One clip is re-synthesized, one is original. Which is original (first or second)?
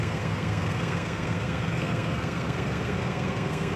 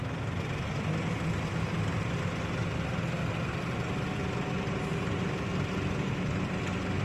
second